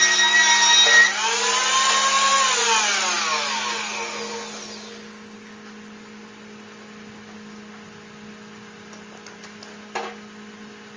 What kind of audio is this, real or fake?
real